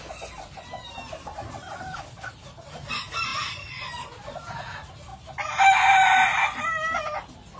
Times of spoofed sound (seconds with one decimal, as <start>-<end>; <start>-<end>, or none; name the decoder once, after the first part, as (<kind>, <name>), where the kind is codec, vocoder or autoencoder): none